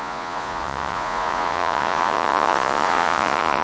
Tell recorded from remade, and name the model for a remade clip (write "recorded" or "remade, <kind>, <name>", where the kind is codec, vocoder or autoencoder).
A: remade, vocoder, Vocos